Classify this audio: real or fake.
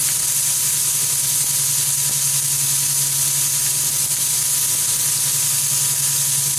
real